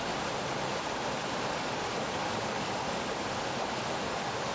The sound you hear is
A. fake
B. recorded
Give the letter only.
B